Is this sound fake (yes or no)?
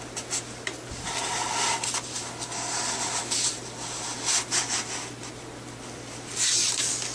no